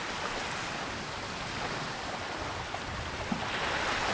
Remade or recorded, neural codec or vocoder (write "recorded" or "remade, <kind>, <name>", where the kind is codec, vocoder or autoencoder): recorded